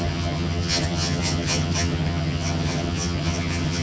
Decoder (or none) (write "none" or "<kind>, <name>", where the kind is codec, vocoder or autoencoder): vocoder, HiFi-GAN